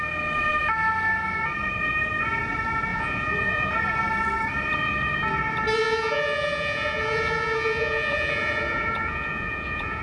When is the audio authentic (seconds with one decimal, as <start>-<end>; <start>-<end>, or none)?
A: 0.0-2.9; 3.7-5.8